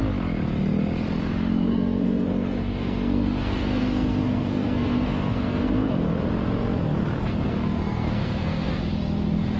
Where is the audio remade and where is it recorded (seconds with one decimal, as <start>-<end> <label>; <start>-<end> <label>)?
0.0-1.7 recorded; 1.7-5.9 remade; 5.9-7.3 recorded; 7.3-8.8 remade; 8.8-9.6 recorded